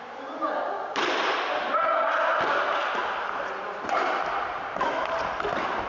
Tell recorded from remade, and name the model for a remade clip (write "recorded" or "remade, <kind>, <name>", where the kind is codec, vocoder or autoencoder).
recorded